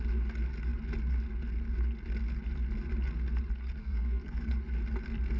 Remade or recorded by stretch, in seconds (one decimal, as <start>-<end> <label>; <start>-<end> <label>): 0.0-3.8 recorded; 3.8-4.5 remade; 4.5-5.4 recorded